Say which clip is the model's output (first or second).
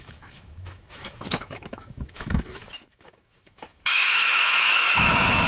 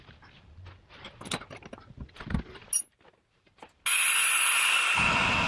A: first